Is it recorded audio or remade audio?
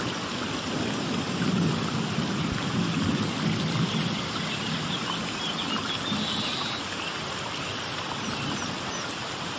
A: recorded